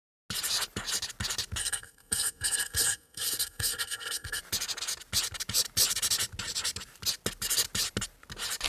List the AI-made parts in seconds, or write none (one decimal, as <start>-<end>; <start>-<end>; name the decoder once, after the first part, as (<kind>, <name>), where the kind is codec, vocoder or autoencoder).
1.6-4.4 (codec, SNAC)